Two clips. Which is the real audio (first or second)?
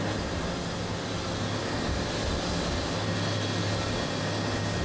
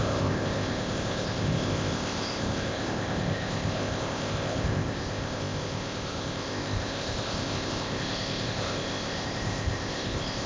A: first